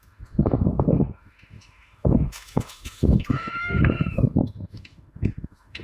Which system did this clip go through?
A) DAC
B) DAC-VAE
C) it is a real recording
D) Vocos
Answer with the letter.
B